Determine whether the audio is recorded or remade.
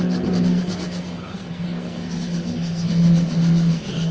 remade